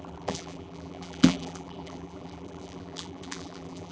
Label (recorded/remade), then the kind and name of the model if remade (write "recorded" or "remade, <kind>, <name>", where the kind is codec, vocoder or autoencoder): remade, vocoder, BigVGAN v2